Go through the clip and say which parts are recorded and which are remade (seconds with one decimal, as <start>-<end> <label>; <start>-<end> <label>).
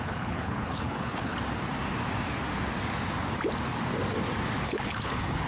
0.0-1.3 remade; 1.3-4.6 recorded; 4.6-5.5 remade